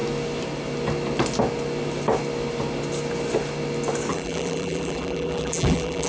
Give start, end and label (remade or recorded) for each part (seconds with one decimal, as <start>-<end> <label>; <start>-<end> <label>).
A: 0.0-4.1 recorded; 4.1-6.1 remade

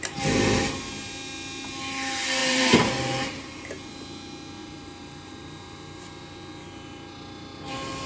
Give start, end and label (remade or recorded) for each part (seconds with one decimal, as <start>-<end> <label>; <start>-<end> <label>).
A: 0.0-2.4 recorded; 2.4-2.9 remade; 2.9-4.6 recorded; 4.6-5.6 remade; 5.6-8.1 recorded

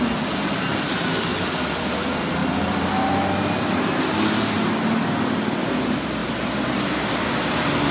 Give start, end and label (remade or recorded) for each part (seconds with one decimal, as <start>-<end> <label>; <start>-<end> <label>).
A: 0.0-2.4 recorded; 2.4-2.9 remade; 2.9-6.2 recorded; 6.2-7.3 remade; 7.3-7.9 recorded

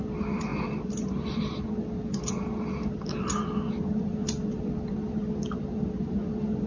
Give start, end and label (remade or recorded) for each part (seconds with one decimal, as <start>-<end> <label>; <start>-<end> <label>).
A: 0.0-6.7 recorded

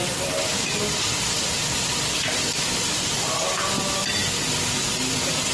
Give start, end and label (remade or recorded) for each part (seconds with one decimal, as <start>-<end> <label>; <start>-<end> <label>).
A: 0.0-2.5 recorded; 2.5-3.4 remade; 3.4-5.5 recorded

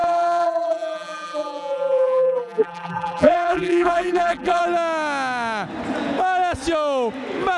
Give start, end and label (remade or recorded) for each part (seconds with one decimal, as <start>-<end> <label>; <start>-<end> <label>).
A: 0.0-4.6 remade; 4.6-7.6 recorded